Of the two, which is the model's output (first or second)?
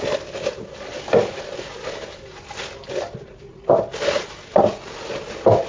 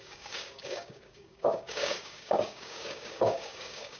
second